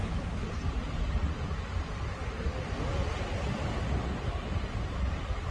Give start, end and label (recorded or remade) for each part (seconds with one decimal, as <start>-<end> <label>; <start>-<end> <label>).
0.0-5.5 recorded

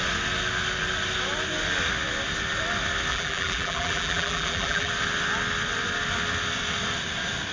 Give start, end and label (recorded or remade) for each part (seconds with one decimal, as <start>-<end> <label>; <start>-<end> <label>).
0.0-3.1 recorded; 3.1-4.9 remade; 4.9-7.5 recorded